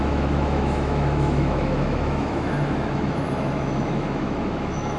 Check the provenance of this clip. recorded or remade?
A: remade